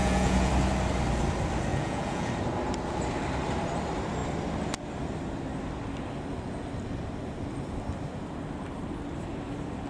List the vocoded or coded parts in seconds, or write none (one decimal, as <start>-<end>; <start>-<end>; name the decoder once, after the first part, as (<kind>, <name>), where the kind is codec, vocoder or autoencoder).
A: 0.0-0.5 (vocoder, Vocos); 1.7-2.3

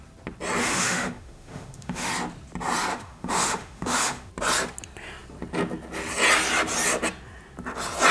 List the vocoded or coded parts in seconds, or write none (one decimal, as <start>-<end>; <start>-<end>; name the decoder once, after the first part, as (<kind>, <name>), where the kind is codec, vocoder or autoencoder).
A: 0.6-2.1 (autoencoder, DAC-VAE); 2.9-4.3

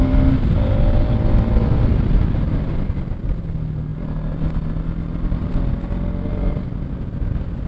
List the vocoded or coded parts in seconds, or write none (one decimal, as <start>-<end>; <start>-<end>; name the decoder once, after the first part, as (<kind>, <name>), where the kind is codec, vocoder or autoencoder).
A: none

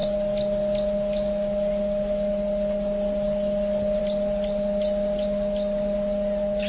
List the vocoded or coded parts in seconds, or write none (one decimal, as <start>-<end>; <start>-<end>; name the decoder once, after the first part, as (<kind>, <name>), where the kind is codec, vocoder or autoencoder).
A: none

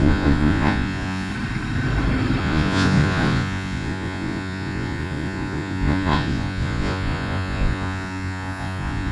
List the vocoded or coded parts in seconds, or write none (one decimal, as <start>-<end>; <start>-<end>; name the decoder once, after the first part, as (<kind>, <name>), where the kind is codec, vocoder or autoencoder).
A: 0.0-1.3 (vocoder, Vocos); 2.4-9.1

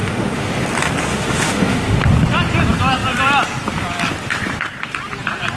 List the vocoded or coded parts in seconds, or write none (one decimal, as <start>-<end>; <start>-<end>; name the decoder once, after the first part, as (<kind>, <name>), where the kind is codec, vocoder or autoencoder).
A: 0.0-0.5 (autoencoder, DAC-VAE); 1.1-2.0

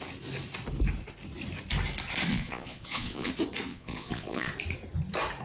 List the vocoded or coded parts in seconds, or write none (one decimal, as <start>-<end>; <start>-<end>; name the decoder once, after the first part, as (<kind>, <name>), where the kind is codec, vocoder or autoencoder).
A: 2.3-3.3 (vocoder, Vocos); 3.7-4.5

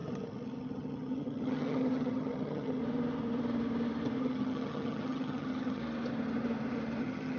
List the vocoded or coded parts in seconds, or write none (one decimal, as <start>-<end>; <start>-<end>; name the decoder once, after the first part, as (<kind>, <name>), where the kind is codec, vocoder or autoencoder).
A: 0.0-2.8 (vocoder, HiFi-GAN); 4.2-5.8; 7.0-7.4